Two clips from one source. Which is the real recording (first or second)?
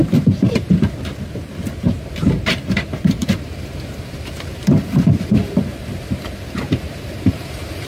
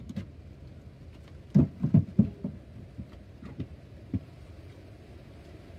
second